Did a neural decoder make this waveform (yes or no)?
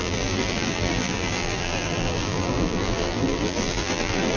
yes